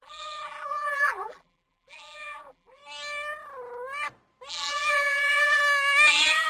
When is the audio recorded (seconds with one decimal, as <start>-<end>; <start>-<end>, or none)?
2.8-4.5; 5.6-6.1